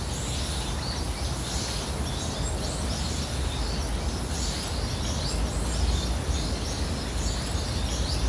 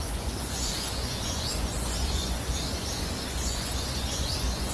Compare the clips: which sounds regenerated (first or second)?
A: second